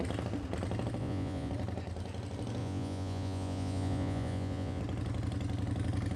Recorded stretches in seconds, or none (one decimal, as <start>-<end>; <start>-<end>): 0.0-1.0; 1.5-2.6; 4.8-6.2